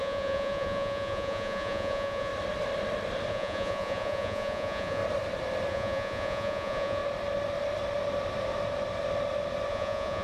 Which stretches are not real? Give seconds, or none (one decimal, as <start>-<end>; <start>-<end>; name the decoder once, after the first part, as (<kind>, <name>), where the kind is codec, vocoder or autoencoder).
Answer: 0.0-2.3 (vocoder, Vocos); 3.3-5.0; 5.7-7.0; 9.7-10.2